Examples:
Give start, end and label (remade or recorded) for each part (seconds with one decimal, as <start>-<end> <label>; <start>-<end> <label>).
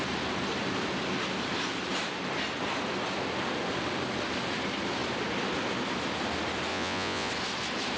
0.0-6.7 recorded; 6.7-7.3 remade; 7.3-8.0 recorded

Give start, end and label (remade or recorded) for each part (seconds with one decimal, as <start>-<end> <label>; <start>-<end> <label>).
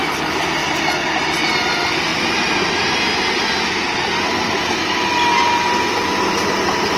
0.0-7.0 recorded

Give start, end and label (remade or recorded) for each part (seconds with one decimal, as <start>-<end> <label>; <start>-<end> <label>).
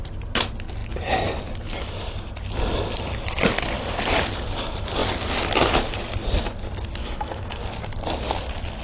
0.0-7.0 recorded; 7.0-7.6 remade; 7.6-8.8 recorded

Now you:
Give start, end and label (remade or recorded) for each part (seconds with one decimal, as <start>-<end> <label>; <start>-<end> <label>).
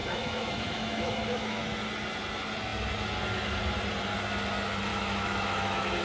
0.0-1.6 remade; 1.6-4.9 recorded; 4.9-6.0 remade